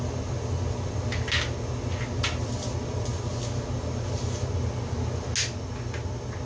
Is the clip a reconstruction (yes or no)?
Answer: no